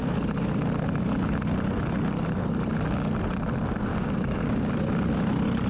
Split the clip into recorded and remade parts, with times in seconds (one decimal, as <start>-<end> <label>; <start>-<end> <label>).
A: 0.0-3.9 recorded; 3.9-4.7 remade; 4.7-5.7 recorded